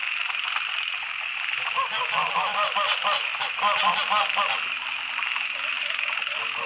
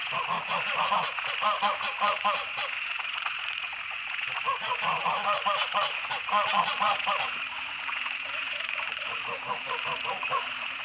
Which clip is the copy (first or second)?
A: second